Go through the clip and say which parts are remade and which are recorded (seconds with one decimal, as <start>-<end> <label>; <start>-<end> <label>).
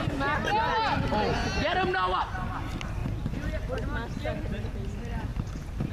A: 0.0-5.9 recorded